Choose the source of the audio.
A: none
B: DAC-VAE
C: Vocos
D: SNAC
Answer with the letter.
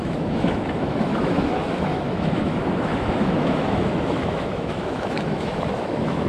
B